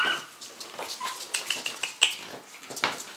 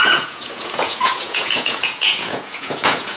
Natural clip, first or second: first